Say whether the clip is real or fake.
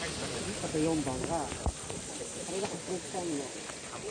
real